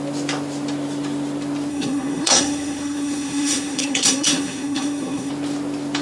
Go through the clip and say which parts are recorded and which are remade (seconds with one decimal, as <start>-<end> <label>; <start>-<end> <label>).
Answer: 0.0-1.7 recorded; 1.7-5.3 remade; 5.3-6.0 recorded